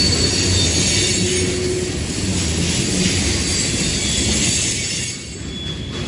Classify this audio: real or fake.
real